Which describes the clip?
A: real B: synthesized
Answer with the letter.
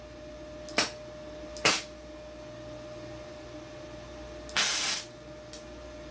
A